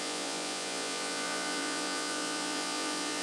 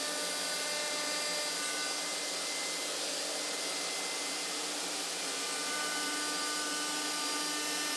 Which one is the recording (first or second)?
second